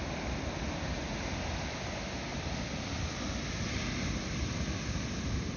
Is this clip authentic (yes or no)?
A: yes